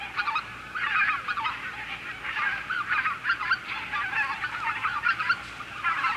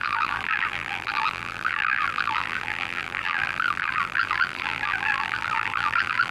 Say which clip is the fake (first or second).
second